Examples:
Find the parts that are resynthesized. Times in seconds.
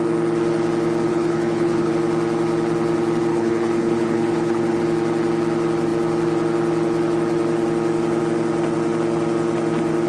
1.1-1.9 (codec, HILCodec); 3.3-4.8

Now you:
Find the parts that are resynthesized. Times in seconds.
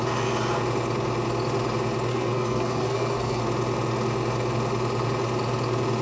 2.1-3.4 (codec, SNAC)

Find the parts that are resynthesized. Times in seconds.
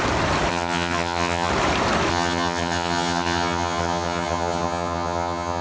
0.5-1.5 (vocoder, HiFi-GAN); 2.1-5.6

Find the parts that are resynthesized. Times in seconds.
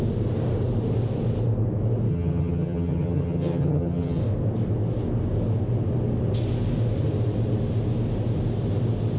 2.1-4.2 (vocoder, HiFi-GAN)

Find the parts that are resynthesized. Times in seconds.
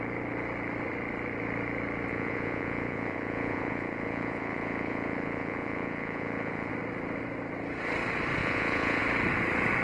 2.1-6.7 (vocoder, Vocos); 8.4-9.0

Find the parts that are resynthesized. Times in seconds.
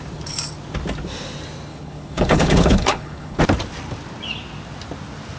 1.7-3.4 (codec, HILCodec)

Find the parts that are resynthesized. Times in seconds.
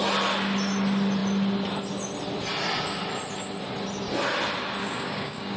4.8-5.6 (codec, DAC)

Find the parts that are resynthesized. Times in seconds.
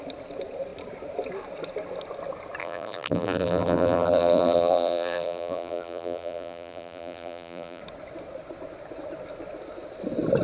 2.6-7.8 (vocoder, BigVGAN v2)